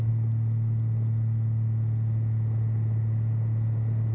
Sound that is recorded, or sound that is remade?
recorded